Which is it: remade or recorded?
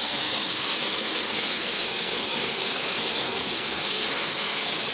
remade